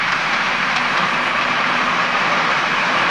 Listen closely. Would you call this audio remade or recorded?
remade